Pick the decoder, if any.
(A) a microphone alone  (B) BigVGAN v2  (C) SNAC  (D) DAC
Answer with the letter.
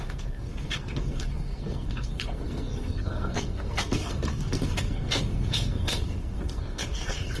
C